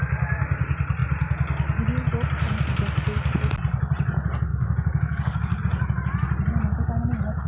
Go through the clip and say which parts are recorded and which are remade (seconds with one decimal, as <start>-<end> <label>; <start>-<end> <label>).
0.0-4.5 recorded; 4.5-5.6 remade; 5.6-7.5 recorded